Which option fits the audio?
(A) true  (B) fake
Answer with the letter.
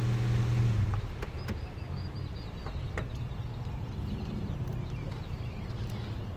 A